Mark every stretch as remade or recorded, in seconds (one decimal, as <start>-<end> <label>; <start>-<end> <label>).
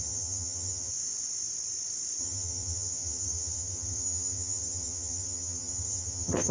0.0-0.9 remade; 0.9-2.2 recorded; 2.2-6.5 remade